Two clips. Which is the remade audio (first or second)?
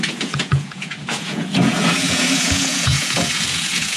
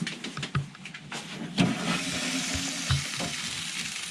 first